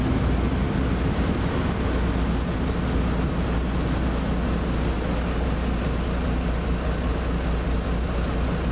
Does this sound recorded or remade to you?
recorded